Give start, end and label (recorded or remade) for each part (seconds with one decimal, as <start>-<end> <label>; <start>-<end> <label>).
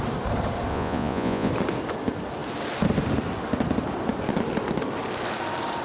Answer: 0.0-0.7 recorded; 0.7-1.5 remade; 1.5-5.8 recorded